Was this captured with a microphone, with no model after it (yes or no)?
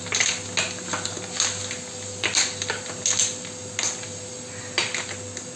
yes